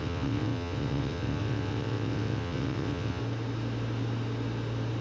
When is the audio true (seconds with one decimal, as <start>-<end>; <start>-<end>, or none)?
3.2-5.0